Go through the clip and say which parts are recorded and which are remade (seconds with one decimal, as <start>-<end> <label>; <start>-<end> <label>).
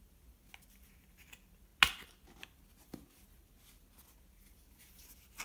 0.0-5.4 recorded